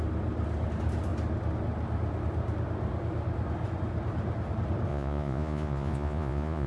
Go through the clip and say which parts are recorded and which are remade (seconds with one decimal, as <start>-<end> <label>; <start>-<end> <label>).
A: 0.0-4.9 recorded; 4.9-6.7 remade